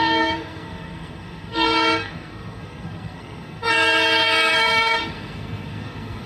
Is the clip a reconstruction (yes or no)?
yes